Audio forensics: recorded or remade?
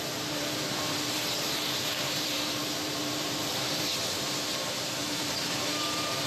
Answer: remade